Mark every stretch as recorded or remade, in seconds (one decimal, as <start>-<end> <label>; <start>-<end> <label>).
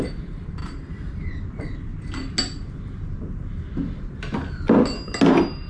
0.0-1.9 remade; 1.9-5.3 recorded; 5.3-5.7 remade